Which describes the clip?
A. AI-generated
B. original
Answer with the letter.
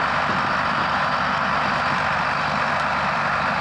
B